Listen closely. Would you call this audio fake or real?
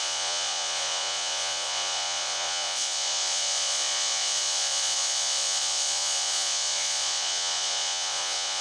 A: fake